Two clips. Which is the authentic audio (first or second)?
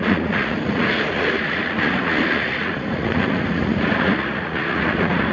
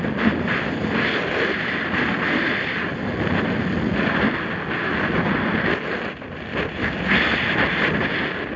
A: second